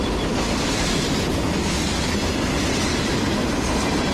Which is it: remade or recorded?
recorded